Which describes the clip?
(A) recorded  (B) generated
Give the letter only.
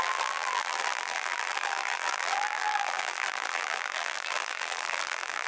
B